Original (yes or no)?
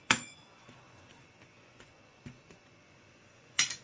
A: no